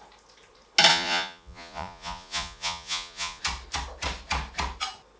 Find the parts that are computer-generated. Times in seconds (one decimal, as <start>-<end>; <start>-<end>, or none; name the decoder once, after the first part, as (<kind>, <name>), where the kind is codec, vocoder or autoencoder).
0.9-3.4 (vocoder, Vocos)